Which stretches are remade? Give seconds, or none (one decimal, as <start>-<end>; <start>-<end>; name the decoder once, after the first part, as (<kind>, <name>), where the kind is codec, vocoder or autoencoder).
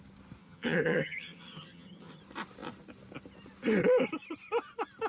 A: 0.4-2.2 (vocoder, HiFi-GAN)